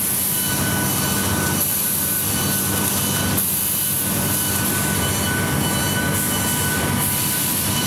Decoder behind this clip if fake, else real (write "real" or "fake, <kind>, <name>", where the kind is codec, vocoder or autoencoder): real